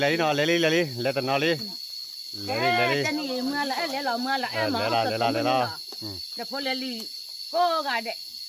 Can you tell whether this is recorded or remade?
recorded